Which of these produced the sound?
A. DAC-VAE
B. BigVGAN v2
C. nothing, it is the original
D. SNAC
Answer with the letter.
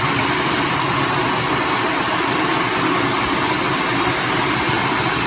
C